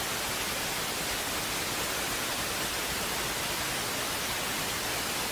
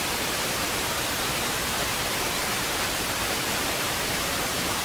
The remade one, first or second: second